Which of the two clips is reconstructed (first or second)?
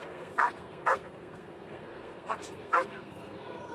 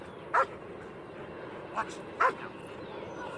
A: first